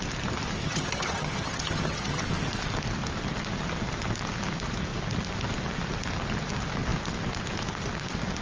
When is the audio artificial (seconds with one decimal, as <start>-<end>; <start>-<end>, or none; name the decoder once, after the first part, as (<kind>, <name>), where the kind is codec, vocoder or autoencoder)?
0.6-2.2 (vocoder, HiFi-GAN)